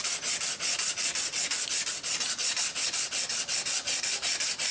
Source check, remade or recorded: recorded